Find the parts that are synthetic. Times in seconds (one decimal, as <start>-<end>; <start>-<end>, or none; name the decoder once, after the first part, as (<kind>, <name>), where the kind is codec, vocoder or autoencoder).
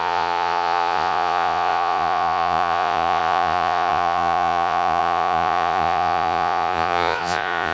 0.0-7.7 (vocoder, Vocos)